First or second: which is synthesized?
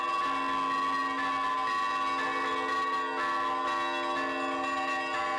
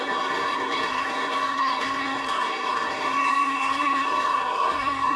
second